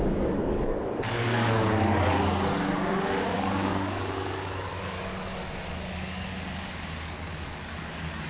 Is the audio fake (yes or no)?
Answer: yes